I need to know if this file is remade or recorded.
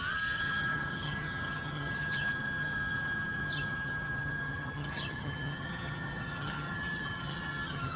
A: remade